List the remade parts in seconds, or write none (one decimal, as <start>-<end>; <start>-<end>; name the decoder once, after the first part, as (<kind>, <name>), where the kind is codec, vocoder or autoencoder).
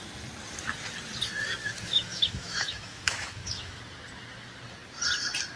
1.6-3.8 (autoencoder, DAC-VAE)